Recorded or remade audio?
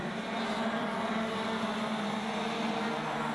recorded